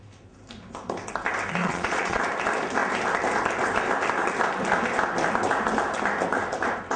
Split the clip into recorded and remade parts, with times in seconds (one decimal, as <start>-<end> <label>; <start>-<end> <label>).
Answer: 0.0-1.6 recorded; 1.6-2.2 remade; 2.2-7.0 recorded